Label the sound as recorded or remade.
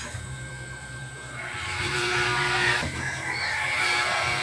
remade